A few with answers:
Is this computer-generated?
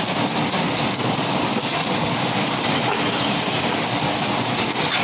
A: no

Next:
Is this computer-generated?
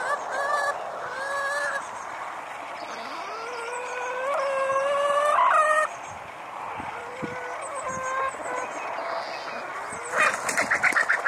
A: no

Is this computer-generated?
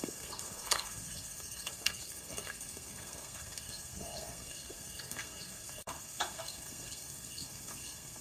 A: yes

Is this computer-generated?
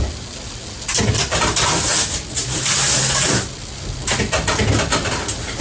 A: no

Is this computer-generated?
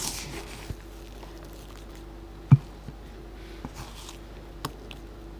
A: no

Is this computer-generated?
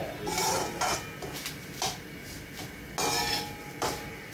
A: no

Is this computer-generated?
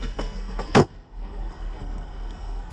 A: yes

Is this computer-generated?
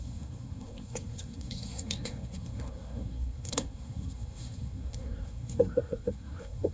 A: yes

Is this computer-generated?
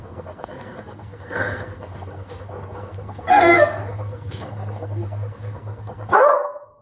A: yes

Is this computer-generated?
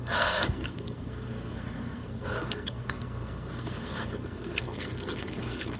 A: yes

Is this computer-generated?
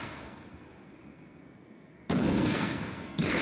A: yes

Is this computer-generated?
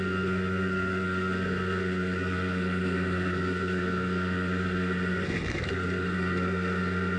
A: yes